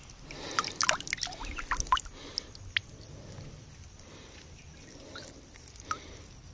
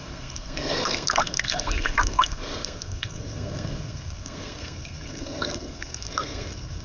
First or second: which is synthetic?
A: second